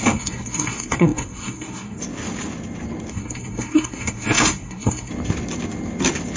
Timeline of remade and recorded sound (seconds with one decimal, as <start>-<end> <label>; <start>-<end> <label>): 0.0-2.0 remade; 2.0-3.1 recorded; 3.1-5.1 remade; 5.1-6.4 recorded